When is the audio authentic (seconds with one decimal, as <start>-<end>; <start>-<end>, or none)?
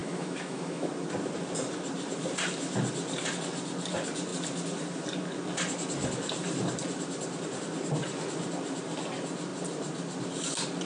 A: 0.9-10.9